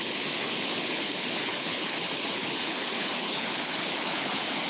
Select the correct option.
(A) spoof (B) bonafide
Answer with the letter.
A